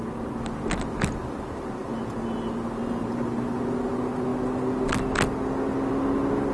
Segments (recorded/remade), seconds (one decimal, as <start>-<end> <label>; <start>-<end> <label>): 0.0-6.5 recorded

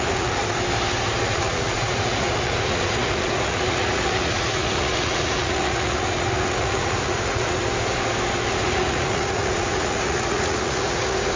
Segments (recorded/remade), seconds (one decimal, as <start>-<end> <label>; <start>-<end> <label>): 0.0-0.4 remade; 0.4-1.2 recorded; 1.2-7.6 remade; 7.6-8.5 recorded; 8.5-11.4 remade